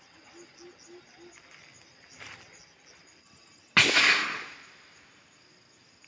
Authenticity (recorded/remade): recorded